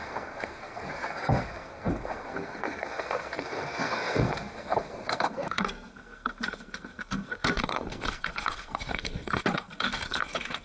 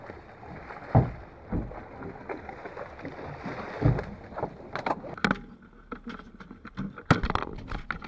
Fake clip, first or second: first